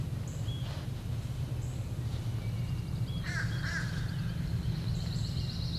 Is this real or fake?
real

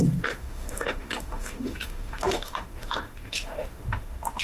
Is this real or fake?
fake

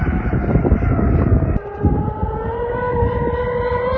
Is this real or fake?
real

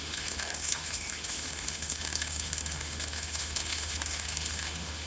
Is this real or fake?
fake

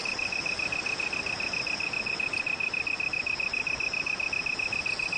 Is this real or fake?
real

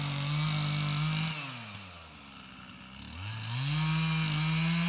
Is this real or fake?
real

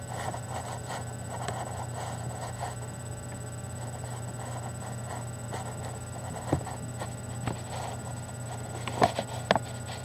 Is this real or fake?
real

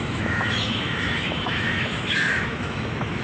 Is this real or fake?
fake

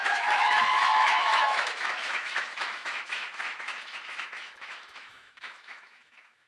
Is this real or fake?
fake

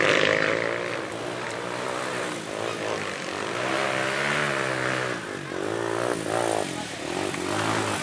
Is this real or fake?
real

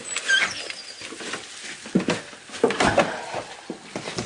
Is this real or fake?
real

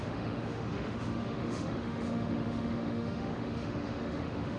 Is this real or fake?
fake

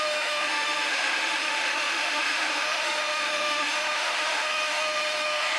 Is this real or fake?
fake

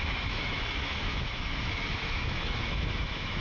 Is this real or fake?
fake